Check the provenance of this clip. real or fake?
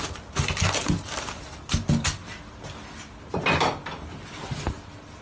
real